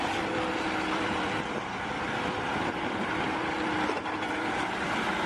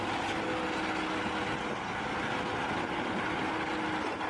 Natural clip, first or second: second